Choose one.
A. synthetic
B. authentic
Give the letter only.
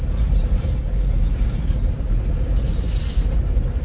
B